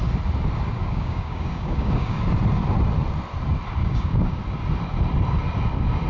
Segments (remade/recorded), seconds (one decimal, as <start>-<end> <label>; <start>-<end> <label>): 0.0-0.8 recorded; 0.8-2.2 remade; 2.2-3.8 recorded; 3.8-4.4 remade; 4.4-6.1 recorded